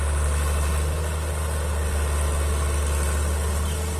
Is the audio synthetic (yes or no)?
no